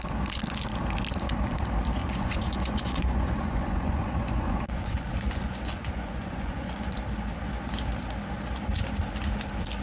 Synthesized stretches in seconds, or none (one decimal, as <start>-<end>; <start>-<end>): 2.0-7.0

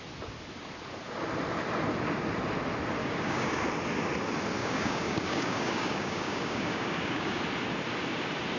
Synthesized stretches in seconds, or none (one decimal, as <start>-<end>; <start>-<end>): 3.0-3.6; 4.6-7.4

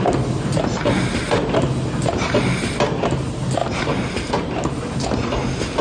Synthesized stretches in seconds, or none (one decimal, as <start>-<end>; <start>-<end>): none

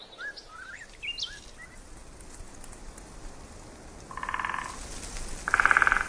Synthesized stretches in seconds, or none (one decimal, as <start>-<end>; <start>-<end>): 2.0-4.6

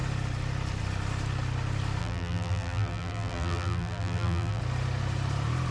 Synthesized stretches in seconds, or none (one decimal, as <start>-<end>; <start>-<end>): 2.0-4.6

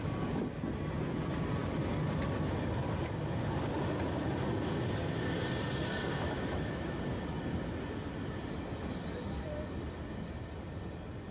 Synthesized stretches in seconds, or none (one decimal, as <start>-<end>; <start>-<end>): 6.1-7.0